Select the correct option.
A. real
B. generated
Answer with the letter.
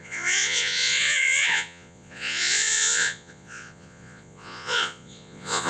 B